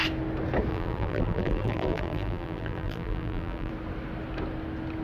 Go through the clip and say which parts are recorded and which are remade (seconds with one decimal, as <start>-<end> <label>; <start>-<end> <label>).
0.0-0.7 recorded; 0.7-3.7 remade; 3.7-5.0 recorded